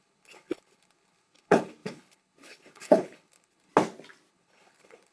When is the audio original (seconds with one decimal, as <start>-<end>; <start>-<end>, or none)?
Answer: 3.7-4.3